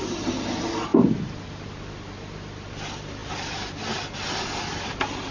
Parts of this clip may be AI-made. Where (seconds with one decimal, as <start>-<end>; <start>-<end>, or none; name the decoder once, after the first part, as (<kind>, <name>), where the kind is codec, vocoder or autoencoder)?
none